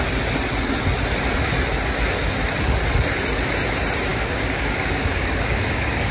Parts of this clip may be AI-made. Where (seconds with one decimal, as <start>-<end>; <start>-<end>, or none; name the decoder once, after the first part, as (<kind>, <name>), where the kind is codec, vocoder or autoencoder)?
4.1-6.1 (codec, DAC)